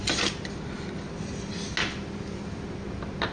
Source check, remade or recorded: recorded